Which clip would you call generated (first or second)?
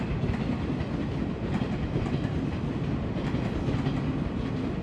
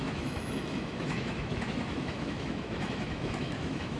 second